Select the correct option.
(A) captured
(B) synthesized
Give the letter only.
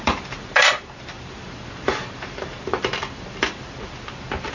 B